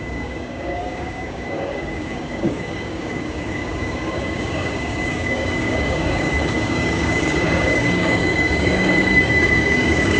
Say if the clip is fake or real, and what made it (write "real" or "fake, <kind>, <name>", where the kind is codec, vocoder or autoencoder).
fake, codec, DAC